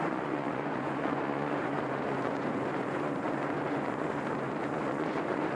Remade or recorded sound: remade